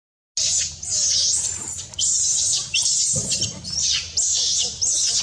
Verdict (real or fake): real